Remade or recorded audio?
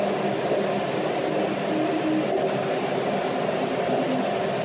recorded